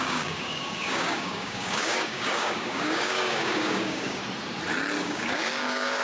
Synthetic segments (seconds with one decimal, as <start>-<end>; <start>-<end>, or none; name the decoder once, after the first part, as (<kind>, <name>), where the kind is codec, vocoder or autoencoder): 0.0-4.2 (codec, DAC); 5.0-6.0

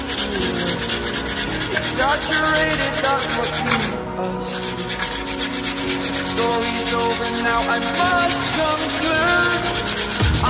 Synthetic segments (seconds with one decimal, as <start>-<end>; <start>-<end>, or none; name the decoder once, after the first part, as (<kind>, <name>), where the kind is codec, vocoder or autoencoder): 6.5-8.1 (codec, DAC); 8.5-9.8

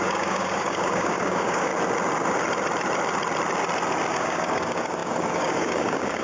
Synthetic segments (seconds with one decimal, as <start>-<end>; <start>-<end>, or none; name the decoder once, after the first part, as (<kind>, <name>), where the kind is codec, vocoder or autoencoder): 0.0-1.7 (codec, DAC); 4.1-6.2

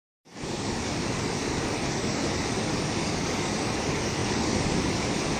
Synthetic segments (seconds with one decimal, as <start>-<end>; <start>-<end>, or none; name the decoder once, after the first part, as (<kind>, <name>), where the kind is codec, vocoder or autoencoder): 0.0-5.4 (codec, DAC)